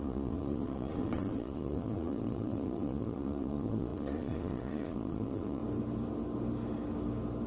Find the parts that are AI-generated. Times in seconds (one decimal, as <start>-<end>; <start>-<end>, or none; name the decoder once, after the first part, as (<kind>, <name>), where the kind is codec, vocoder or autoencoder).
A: 0.0-5.6 (vocoder, Vocos)